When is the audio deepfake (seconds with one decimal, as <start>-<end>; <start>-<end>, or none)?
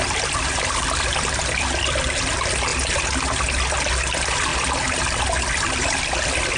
none